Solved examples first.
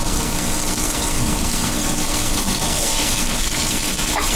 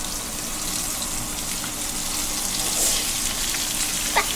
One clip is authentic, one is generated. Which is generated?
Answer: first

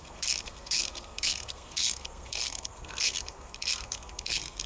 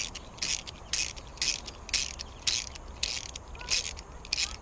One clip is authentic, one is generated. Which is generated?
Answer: first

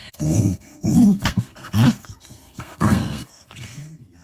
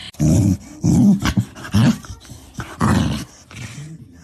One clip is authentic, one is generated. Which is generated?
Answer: first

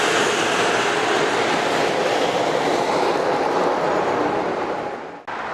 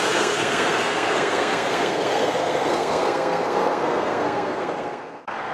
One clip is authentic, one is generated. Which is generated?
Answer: second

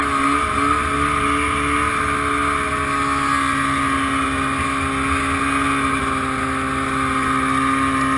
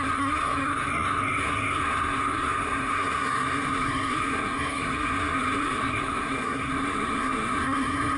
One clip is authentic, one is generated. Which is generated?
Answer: second